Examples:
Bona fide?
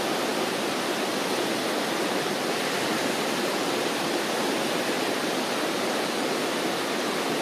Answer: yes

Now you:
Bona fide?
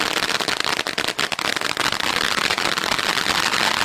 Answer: no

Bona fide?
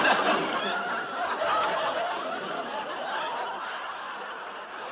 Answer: yes